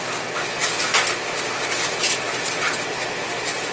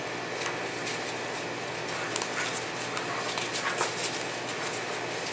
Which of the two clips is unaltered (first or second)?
second